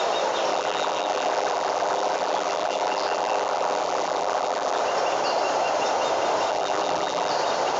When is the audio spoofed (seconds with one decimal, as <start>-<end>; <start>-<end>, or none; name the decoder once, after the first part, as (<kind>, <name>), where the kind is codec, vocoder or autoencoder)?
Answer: 0.5-4.8 (vocoder, BigVGAN v2); 6.5-7.3